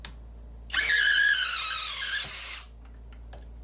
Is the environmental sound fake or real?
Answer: real